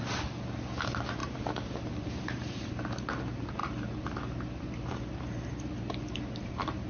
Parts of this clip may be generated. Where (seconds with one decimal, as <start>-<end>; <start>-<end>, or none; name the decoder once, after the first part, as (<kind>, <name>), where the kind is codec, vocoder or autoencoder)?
1.2-2.7 (vocoder, BigVGAN v2); 3.6-6.9